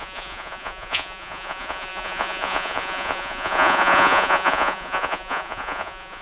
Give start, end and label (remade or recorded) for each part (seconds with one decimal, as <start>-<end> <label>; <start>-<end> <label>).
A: 0.0-6.2 remade